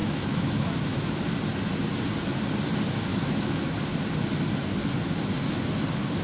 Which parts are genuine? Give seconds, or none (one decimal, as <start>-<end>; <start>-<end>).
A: 1.2-3.1; 3.7-6.2